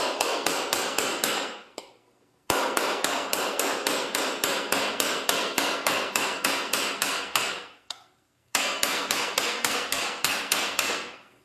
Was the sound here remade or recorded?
remade